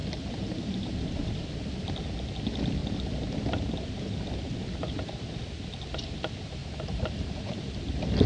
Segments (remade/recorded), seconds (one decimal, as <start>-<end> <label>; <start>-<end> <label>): 0.0-0.7 remade; 0.7-6.6 recorded; 6.6-8.3 remade